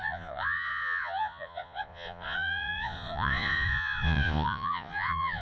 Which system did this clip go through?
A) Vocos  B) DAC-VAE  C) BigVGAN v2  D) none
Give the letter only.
A